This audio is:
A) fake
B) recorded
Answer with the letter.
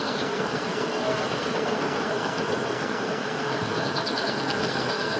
A